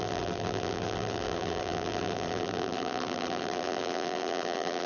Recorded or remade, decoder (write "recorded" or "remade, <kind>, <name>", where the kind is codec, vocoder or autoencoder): remade, vocoder, BigVGAN v2